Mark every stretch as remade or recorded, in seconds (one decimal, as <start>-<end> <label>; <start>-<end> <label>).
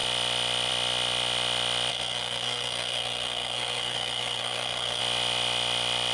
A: 0.0-1.9 recorded; 1.9-5.0 remade; 5.0-6.1 recorded